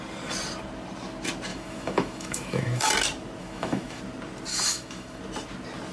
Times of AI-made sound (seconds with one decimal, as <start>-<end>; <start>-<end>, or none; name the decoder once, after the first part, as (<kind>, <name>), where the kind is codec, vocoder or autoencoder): 1.5-2.9 (autoencoder, DAC-VAE); 3.4-4.0; 4.5-5.2